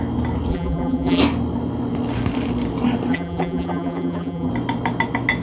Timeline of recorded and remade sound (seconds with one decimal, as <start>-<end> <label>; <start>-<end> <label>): 0.0-0.5 recorded; 0.5-1.2 remade; 1.2-3.1 recorded; 3.1-4.5 remade; 4.5-5.4 recorded